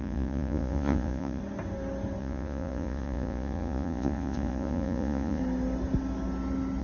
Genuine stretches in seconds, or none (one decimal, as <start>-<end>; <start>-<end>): 1.4-2.2; 5.4-6.8